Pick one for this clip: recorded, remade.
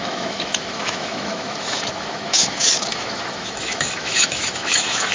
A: remade